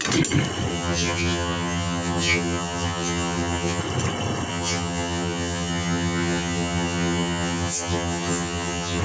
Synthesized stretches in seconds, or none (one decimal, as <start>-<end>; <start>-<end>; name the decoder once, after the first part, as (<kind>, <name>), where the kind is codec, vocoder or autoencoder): 0.7-3.8 (vocoder, HiFi-GAN); 4.5-9.0